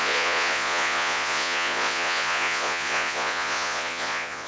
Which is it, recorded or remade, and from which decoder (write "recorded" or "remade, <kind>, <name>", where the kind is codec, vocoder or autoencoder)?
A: remade, vocoder, Vocos